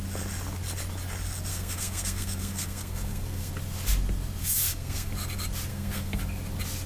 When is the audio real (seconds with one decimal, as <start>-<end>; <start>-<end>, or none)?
0.0-1.5; 3.5-4.4; 5.1-5.7; 6.2-6.9